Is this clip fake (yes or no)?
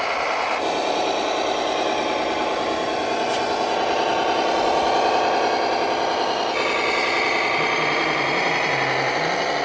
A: no